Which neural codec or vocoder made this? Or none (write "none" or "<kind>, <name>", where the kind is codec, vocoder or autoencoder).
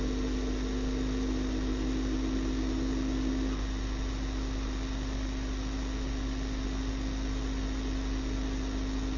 none